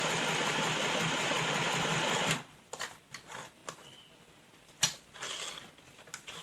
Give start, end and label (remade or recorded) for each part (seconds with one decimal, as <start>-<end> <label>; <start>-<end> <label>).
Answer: 0.0-6.4 recorded

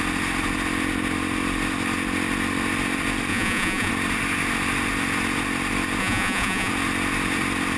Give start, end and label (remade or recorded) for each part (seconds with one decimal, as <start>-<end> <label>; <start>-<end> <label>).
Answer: 0.0-3.3 recorded; 3.3-3.9 remade; 3.9-6.0 recorded; 6.0-6.7 remade; 6.7-7.8 recorded